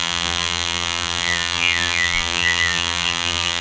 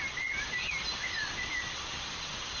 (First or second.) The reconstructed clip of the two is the first